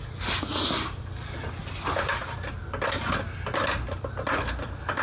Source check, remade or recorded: recorded